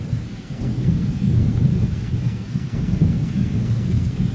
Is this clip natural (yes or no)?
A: no